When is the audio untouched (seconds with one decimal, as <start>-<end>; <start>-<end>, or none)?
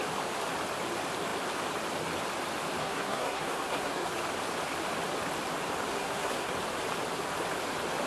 0.0-2.8; 4.1-5.9; 6.5-8.1